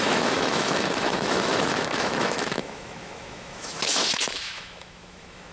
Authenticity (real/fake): fake